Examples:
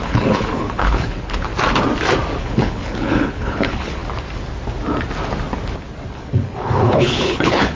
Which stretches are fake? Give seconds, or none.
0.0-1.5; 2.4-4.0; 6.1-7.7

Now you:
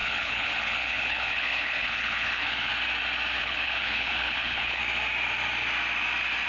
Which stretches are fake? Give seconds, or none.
0.0-2.7; 3.4-4.8

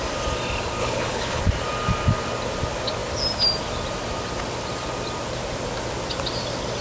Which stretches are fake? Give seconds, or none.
0.8-1.4

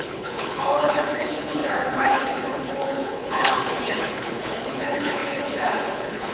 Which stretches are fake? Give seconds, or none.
0.0-6.3

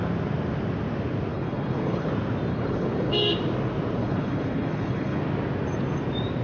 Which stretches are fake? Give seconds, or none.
1.3-2.1; 2.5-3.1; 4.0-5.2

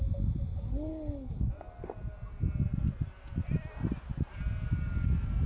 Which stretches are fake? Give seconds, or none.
0.7-1.5

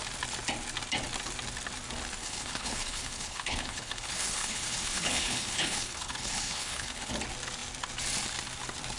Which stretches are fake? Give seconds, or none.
2.2-7.1

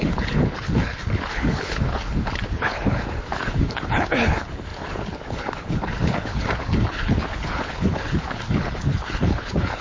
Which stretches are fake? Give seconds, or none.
0.0-9.8